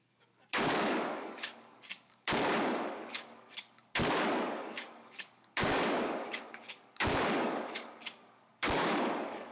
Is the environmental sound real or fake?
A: fake